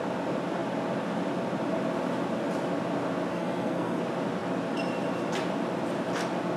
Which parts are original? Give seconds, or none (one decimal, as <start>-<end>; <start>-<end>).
0.0-3.3; 4.0-6.6